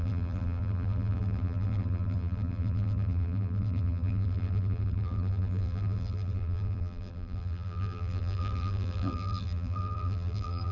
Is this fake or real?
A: fake